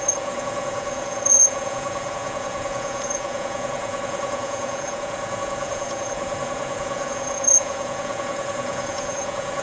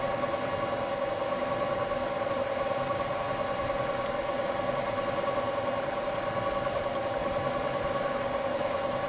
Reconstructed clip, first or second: first